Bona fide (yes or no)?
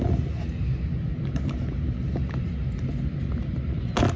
yes